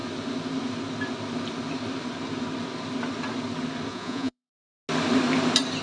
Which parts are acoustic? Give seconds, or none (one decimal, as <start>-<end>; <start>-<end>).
0.0-3.9; 4.5-5.8